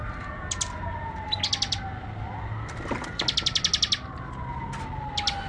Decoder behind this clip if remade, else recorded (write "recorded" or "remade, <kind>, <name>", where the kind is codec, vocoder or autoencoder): recorded